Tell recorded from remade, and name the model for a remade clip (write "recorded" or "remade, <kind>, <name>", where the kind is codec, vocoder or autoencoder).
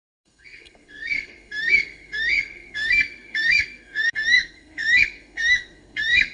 remade, codec, SNAC